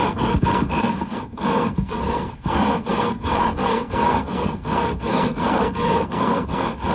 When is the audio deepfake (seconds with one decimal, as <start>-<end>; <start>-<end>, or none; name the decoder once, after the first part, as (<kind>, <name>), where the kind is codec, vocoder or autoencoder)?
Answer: 0.0-6.9 (codec, SNAC)